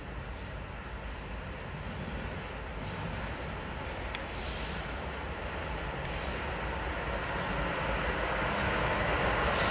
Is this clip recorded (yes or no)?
yes